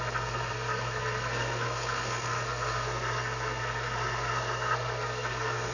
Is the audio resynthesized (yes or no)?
yes